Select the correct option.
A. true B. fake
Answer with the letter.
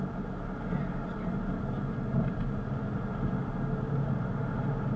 A